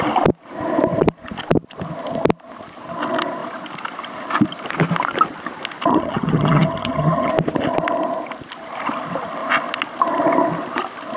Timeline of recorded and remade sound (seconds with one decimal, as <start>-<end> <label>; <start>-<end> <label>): 0.0-5.9 recorded; 5.9-7.3 remade; 7.3-11.2 recorded

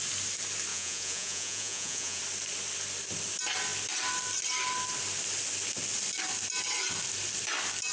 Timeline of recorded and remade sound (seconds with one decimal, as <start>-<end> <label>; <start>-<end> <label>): 0.0-0.7 recorded; 0.7-2.2 remade; 2.2-7.9 recorded

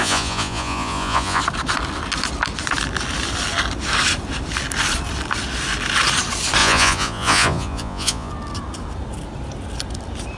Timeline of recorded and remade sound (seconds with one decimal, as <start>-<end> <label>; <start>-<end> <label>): 0.0-1.4 remade; 1.4-6.6 recorded; 6.6-8.3 remade; 8.3-10.4 recorded

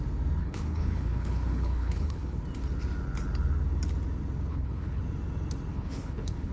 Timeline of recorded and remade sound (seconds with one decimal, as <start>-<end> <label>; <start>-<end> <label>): 0.0-0.4 recorded; 0.4-2.4 remade; 2.4-4.5 recorded; 4.5-5.0 remade; 5.0-5.7 recorded; 5.7-6.5 remade

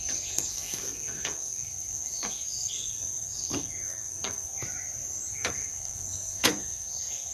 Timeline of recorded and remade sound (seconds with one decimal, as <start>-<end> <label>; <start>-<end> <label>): 0.0-4.5 remade; 4.5-5.3 recorded; 5.3-7.3 remade